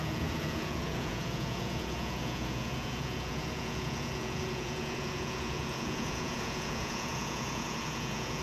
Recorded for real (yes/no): no